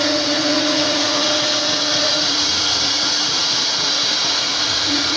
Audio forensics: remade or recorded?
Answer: remade